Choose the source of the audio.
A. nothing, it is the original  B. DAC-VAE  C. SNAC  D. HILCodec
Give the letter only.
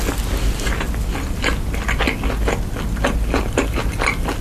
A